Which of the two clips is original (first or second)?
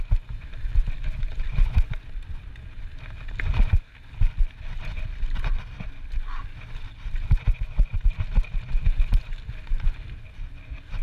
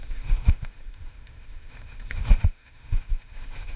first